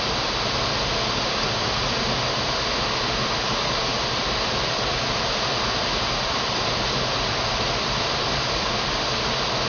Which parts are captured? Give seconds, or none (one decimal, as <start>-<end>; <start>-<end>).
0.0-3.9; 8.7-9.7